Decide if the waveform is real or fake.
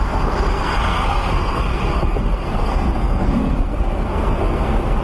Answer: fake